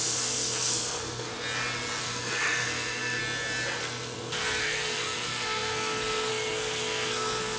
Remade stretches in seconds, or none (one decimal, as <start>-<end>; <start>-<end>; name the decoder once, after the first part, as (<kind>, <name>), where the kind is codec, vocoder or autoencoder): 0.0-1.3 (codec, SNAC); 2.0-3.2; 3.8-7.6